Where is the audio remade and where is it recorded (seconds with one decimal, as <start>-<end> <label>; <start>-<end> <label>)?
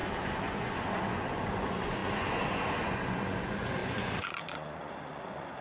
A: 0.0-5.6 remade